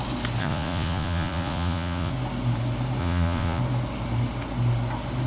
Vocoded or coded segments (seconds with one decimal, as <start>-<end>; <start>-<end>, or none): 0.4-2.1; 3.0-3.6